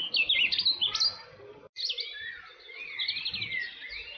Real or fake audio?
real